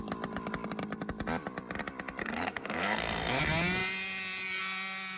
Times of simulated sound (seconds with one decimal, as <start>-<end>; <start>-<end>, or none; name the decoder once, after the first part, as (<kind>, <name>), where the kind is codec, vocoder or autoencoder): 2.2-3.4 (codec, SNAC)